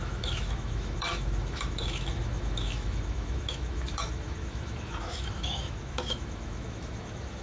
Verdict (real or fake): fake